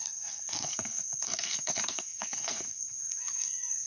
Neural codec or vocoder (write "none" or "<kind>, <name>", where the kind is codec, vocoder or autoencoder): codec, SNAC